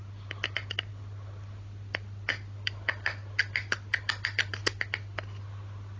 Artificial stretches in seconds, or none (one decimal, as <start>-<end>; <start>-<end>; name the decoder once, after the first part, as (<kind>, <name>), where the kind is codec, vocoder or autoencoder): none